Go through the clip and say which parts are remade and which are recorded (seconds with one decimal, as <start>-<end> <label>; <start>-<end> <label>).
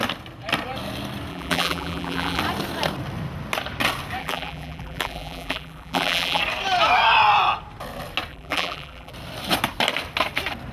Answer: 0.0-1.3 recorded; 1.3-2.4 remade; 2.4-4.2 recorded; 4.2-6.4 remade; 6.4-8.3 recorded; 8.3-9.1 remade; 9.1-10.7 recorded